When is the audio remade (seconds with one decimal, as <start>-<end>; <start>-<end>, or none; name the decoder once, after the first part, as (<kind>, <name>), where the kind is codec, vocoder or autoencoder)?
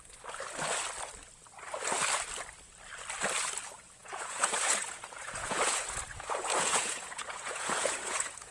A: 4.0-8.5 (vocoder, Vocos)